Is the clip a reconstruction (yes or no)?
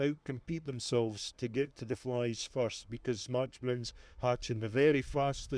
yes